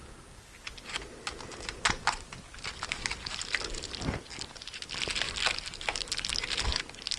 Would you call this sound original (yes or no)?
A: yes